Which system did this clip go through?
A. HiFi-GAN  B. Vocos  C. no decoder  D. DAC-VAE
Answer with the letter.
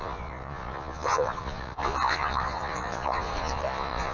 B